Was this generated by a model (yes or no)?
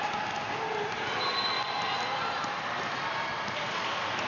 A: no